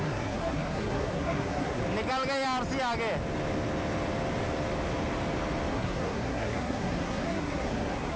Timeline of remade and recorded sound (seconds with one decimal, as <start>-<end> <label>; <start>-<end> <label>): 0.0-1.8 remade; 1.8-5.7 recorded; 5.7-8.2 remade